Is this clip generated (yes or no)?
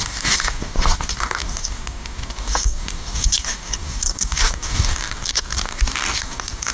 yes